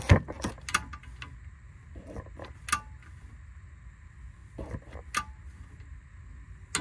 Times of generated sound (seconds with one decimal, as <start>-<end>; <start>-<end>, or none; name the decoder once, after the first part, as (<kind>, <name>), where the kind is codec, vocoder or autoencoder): none